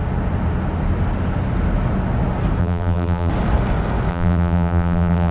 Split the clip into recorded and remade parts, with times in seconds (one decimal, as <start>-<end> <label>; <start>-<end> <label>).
0.0-2.6 recorded; 2.6-3.3 remade; 3.3-4.1 recorded; 4.1-5.3 remade